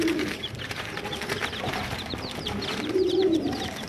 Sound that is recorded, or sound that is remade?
remade